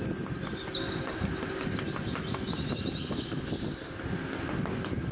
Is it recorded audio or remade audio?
recorded